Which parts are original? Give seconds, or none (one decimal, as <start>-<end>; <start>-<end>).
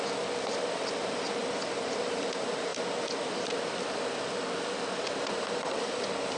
0.0-6.4